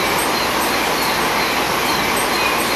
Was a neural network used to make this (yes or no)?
no